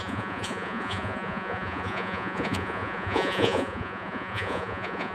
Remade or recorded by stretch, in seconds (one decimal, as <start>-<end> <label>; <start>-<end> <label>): 0.0-5.1 remade